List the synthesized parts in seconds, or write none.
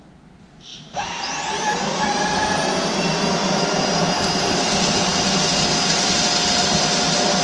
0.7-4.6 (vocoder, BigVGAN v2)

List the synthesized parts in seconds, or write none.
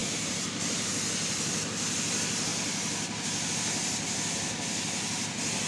0.0-0.9 (vocoder, BigVGAN v2)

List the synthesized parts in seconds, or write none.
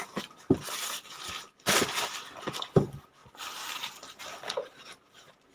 none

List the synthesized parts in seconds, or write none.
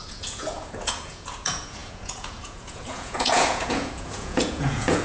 0.0-5.0 (vocoder, Vocos)